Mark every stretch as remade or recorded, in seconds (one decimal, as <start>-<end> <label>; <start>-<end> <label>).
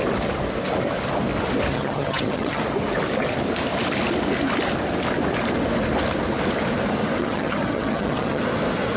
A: 0.0-1.7 recorded; 1.7-2.6 remade; 2.6-7.2 recorded; 7.2-8.4 remade; 8.4-9.0 recorded